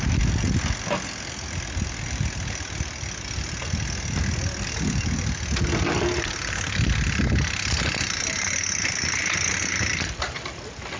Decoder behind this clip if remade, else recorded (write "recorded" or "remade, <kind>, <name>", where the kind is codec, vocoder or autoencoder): recorded